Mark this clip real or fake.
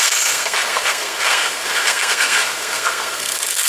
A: fake